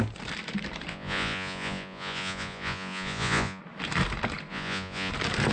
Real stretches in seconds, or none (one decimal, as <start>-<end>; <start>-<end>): 0.0-0.9; 3.6-4.5; 5.1-5.5